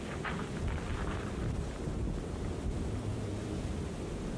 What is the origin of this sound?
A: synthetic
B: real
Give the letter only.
B